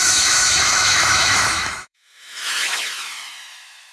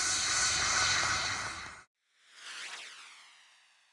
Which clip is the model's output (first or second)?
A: first